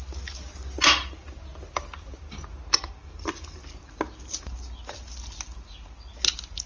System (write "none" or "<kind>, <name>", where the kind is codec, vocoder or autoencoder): none